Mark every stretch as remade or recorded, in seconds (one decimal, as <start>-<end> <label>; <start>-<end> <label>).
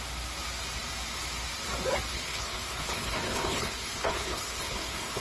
0.0-2.1 recorded; 2.1-5.2 remade